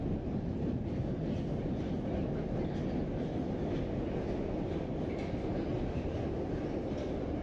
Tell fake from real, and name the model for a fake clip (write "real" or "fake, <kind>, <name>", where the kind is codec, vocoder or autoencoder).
real